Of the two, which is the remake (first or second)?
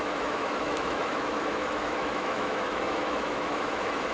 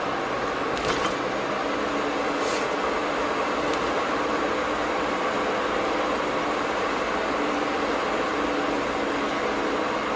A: first